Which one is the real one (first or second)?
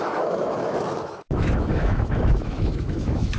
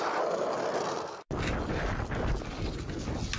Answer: second